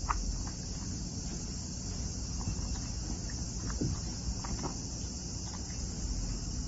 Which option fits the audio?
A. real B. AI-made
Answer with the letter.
A